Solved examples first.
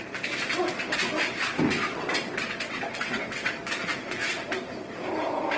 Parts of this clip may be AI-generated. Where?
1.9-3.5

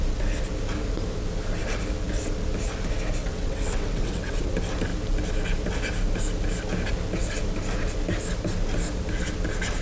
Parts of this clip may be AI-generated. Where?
3.2-4.4

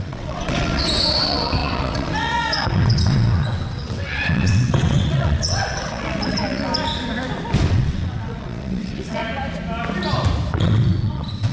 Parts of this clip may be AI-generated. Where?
0.0-6.7; 7.7-9.2; 10.5-11.5

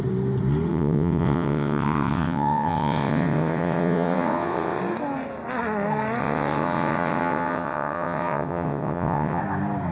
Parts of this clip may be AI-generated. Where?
0.7-4.8; 6.2-9.4

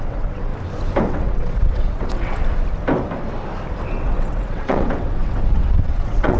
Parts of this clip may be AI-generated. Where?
0.0-0.5; 1.1-2.4; 3.9-6.4